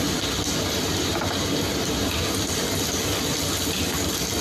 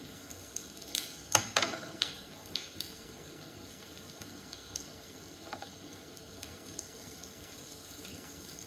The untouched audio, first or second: first